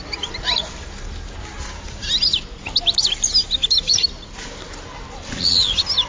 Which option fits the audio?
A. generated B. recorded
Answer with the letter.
B